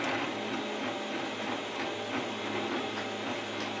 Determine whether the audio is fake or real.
real